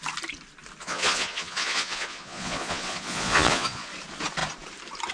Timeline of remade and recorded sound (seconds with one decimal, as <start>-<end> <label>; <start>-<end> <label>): 0.0-0.8 recorded; 0.8-3.9 remade; 3.9-5.1 recorded